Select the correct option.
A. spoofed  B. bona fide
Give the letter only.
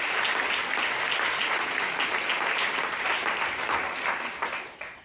B